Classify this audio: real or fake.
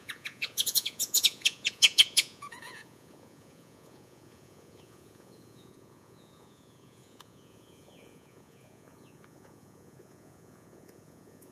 fake